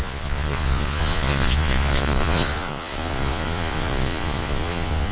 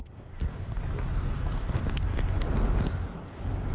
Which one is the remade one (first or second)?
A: first